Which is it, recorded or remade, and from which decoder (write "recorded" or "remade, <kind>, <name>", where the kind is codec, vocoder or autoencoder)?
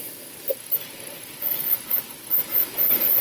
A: recorded